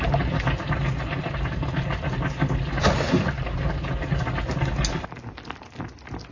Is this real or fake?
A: real